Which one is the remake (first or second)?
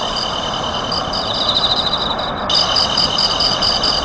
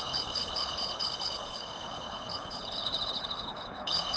second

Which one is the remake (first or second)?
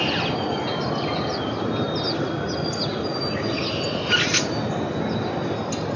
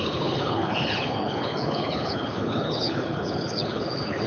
second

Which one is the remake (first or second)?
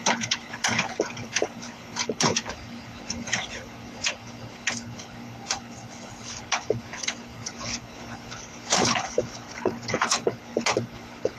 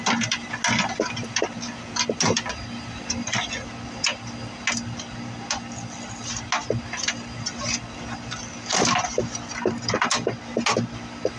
first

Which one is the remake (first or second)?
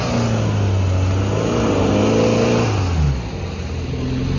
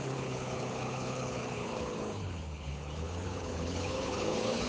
second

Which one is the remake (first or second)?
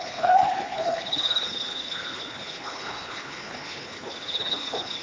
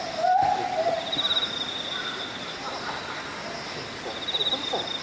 first